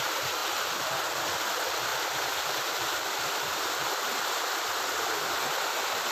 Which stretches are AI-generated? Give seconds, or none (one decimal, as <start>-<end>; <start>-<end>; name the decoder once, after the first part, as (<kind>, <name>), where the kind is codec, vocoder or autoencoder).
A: 0.4-1.2 (vocoder, BigVGAN v2); 1.9-4.2